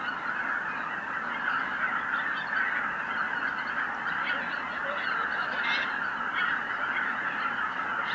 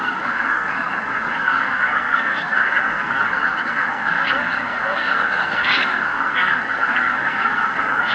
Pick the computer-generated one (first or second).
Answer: second